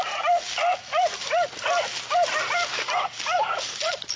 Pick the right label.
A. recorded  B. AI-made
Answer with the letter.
A